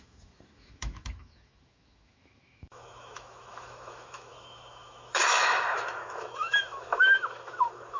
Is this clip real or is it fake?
fake